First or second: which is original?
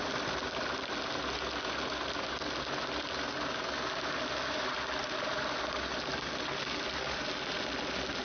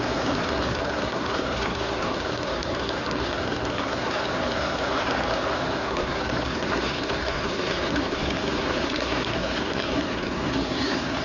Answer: first